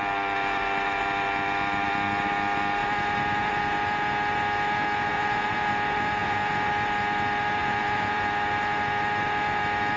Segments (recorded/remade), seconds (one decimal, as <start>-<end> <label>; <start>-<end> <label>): 0.0-5.1 recorded; 5.1-5.7 remade; 5.7-6.2 recorded; 6.2-6.7 remade; 6.7-7.6 recorded; 7.6-8.2 remade; 8.2-10.0 recorded